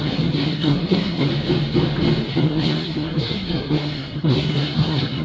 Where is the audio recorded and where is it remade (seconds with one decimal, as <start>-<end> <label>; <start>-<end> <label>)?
0.0-1.3 remade; 1.3-2.3 recorded; 2.3-5.2 remade